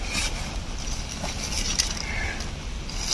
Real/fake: real